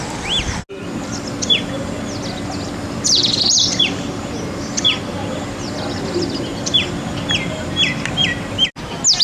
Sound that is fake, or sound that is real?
real